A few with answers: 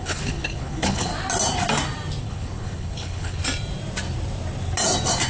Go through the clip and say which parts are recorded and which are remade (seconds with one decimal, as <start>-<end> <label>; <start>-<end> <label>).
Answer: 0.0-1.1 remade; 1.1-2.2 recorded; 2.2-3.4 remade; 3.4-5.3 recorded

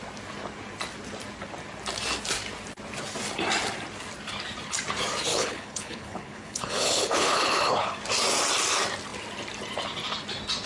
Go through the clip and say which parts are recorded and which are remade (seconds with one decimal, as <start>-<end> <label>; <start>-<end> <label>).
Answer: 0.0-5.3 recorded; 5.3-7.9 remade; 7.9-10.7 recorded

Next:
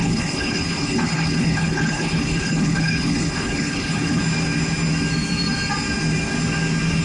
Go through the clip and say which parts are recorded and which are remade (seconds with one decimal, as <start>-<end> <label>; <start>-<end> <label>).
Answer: 0.0-4.2 remade; 4.2-7.0 recorded

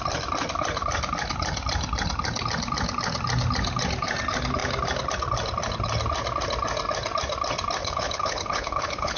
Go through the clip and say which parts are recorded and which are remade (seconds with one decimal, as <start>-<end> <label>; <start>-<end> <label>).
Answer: 0.0-7.8 recorded; 7.8-9.2 remade

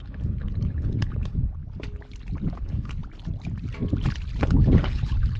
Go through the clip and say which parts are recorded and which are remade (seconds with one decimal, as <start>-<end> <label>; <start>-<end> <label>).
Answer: 0.0-1.6 remade; 1.6-2.6 recorded; 2.6-3.0 remade; 3.0-4.4 recorded; 4.4-5.4 remade

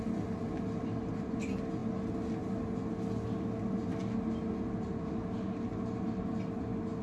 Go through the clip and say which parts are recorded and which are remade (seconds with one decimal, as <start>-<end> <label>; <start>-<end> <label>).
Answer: 0.0-7.0 recorded

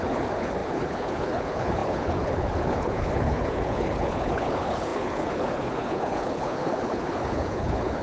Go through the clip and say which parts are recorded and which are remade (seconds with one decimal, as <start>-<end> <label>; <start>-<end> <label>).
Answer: 0.0-8.0 remade